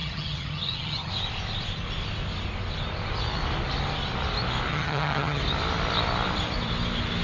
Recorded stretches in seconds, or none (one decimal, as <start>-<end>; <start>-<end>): 1.1-4.7; 5.4-7.2